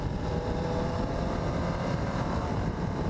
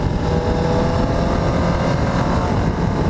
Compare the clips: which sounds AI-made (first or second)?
first